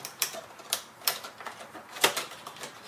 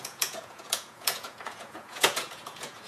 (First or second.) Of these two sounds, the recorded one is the first